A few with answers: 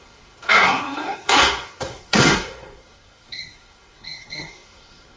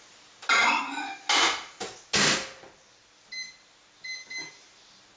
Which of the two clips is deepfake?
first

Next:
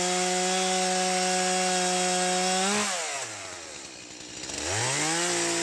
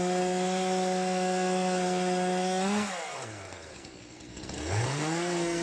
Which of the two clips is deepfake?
second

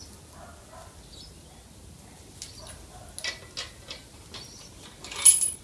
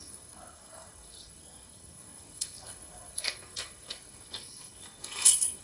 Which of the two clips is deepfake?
second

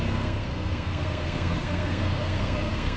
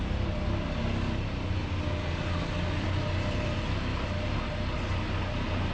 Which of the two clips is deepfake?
first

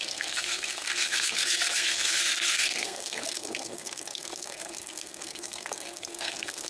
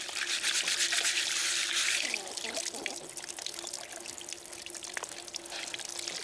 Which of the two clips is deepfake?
first